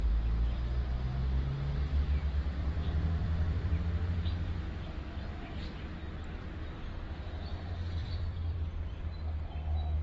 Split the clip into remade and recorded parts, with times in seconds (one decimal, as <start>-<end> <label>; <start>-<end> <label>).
0.0-2.6 recorded; 2.6-3.8 remade; 3.8-8.0 recorded; 8.0-9.0 remade; 9.0-10.0 recorded